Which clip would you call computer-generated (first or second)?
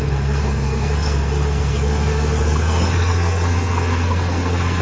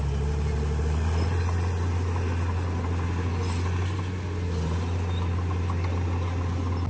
first